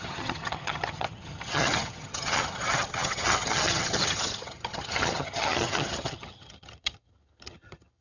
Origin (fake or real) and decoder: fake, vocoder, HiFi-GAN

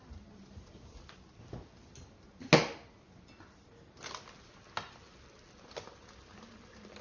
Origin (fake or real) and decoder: real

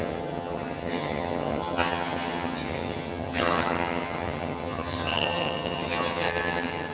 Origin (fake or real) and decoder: fake, vocoder, HiFi-GAN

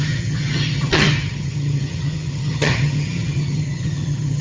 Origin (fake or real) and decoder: fake, vocoder, HiFi-GAN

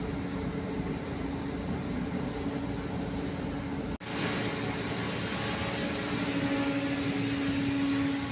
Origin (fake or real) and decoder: real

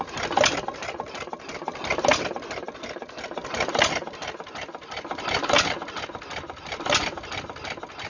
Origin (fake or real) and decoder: real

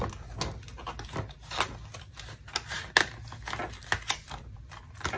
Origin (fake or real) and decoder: real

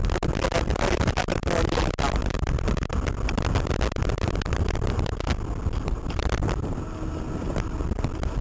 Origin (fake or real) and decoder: real